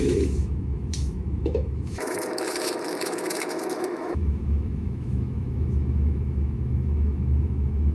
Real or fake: fake